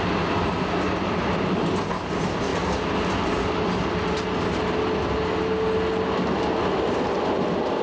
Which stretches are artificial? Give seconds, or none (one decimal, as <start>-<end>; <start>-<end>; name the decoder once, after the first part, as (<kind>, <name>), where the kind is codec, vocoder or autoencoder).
none